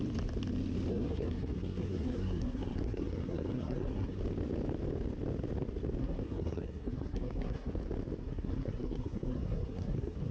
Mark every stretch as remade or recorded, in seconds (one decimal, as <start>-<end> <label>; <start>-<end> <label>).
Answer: 0.0-0.9 recorded; 0.9-4.2 remade; 4.2-6.0 recorded; 6.0-7.7 remade; 7.7-8.2 recorded; 8.2-10.3 remade